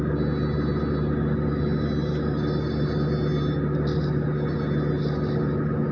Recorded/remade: recorded